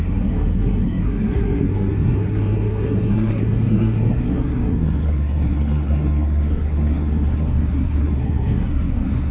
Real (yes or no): no